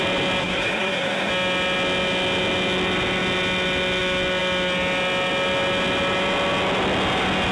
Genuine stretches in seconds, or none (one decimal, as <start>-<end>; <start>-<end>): 0.0-0.4; 1.3-7.5